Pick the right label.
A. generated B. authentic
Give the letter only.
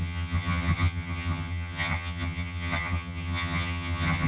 A